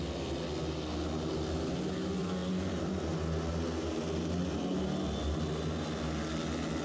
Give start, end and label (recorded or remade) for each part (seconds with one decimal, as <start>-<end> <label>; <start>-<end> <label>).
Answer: 0.0-6.8 recorded